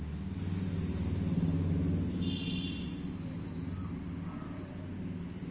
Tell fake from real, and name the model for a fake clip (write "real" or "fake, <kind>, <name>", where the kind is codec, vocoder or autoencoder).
real